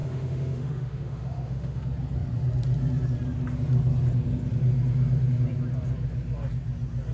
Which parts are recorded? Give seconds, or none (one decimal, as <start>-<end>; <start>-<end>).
1.8-7.1